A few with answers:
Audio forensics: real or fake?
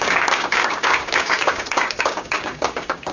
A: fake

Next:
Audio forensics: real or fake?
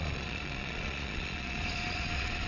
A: fake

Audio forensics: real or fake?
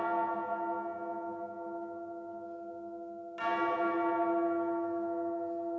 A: real